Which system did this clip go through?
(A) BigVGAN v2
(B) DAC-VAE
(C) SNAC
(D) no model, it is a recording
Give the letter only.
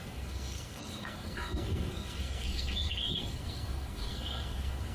C